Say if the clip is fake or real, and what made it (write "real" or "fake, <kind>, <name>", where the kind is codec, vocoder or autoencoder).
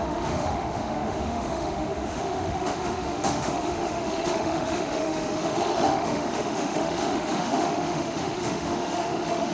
fake, autoencoder, DAC-VAE